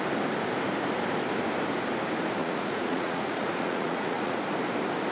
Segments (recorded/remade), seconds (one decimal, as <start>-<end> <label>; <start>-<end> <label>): 0.0-2.4 recorded; 2.4-4.4 remade; 4.4-5.1 recorded